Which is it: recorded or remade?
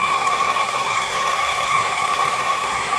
remade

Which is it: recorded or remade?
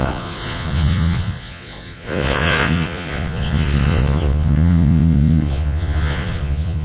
remade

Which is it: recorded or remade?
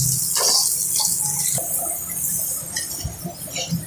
recorded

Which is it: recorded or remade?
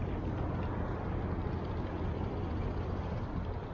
recorded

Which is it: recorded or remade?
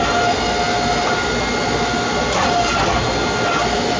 recorded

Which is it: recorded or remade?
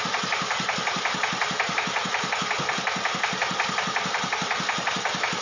recorded